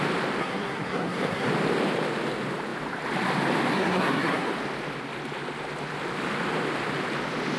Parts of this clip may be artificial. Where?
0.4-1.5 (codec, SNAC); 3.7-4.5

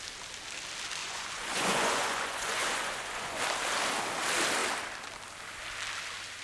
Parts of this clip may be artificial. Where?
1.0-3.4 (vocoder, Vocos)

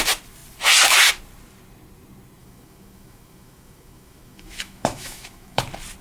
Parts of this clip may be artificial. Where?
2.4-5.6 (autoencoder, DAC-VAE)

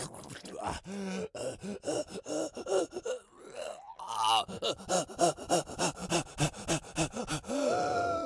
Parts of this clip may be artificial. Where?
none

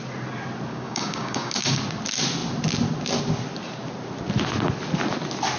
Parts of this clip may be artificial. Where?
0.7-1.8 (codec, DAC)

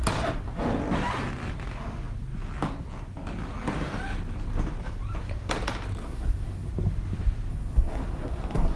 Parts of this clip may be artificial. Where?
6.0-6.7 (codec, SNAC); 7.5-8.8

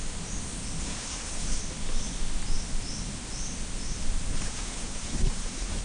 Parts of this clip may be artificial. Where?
0.8-1.6 (codec, SNAC); 4.3-5.8